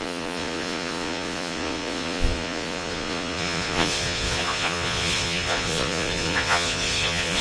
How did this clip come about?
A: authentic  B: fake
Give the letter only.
B